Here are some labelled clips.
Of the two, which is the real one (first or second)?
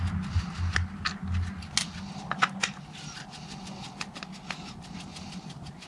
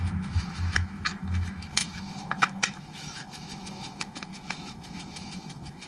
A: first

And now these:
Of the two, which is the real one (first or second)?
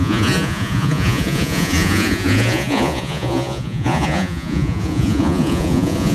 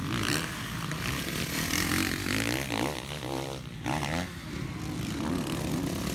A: second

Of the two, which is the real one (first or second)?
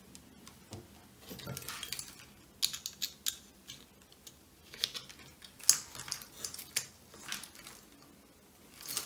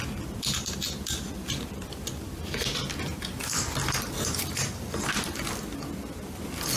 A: first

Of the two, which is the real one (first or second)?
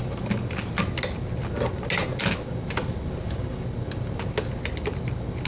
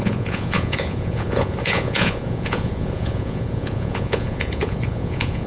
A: first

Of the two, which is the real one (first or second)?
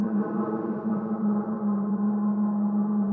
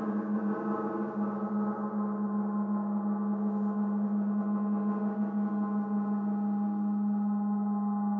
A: second